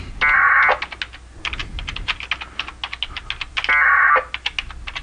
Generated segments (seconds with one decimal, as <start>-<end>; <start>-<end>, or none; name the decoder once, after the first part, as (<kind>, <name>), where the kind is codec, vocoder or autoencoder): none